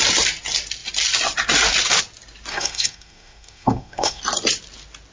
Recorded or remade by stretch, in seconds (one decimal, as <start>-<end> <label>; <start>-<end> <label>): 0.0-2.5 recorded; 2.5-4.2 remade; 4.2-5.1 recorded